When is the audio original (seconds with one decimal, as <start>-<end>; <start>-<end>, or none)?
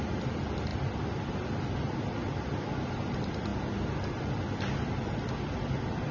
0.0-6.1